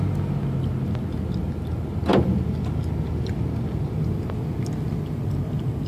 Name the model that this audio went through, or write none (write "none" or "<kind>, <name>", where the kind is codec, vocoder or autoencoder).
none